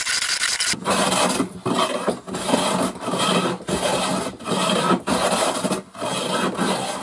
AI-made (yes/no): no